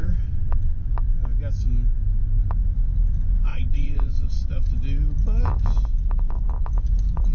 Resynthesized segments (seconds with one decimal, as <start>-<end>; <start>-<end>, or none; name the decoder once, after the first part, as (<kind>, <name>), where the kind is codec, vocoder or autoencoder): 0.0-0.9 (vocoder, WaveNeXt); 3.5-4.7